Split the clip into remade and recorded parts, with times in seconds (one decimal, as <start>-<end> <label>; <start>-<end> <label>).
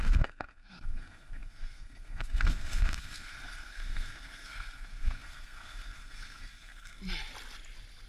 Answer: 0.0-7.0 remade; 7.0-8.1 recorded